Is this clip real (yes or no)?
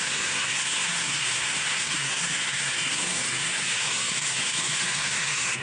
no